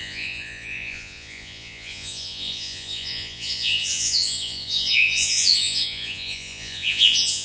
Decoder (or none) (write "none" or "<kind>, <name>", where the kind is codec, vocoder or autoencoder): vocoder, Vocos